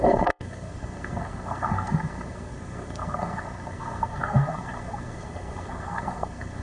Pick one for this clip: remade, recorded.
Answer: remade